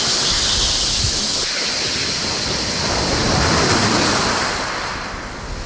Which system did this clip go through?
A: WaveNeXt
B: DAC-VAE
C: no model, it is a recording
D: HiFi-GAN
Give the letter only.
C